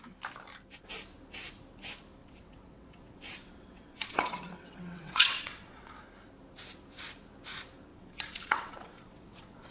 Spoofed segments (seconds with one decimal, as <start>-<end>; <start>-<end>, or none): 2.2-5.9; 7.9-9.7